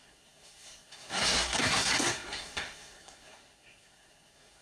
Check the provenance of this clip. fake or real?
fake